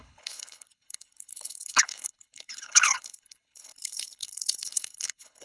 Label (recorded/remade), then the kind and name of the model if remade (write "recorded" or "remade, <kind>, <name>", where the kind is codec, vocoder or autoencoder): remade, codec, HILCodec